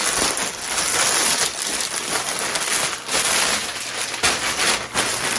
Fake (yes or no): no